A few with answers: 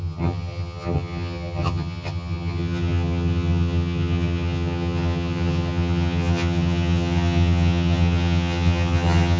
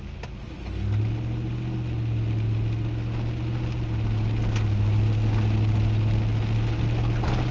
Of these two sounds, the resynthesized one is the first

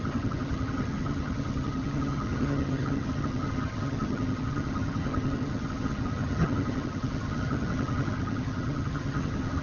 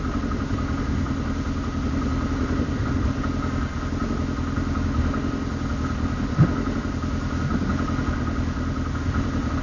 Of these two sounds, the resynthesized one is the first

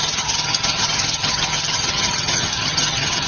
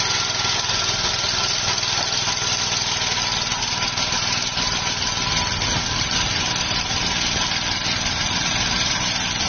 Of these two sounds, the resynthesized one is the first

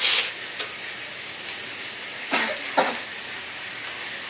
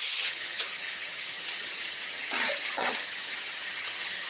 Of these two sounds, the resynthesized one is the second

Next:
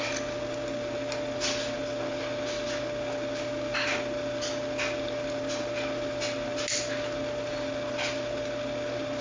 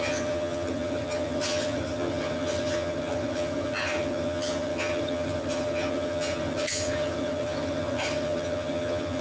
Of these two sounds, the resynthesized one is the second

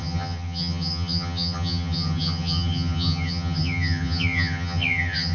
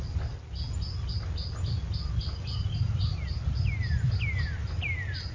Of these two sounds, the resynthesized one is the first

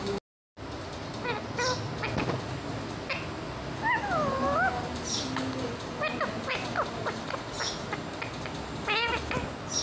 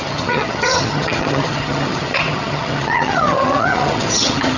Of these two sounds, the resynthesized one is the second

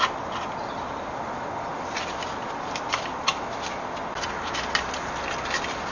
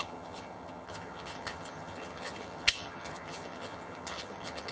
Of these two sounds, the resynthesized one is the second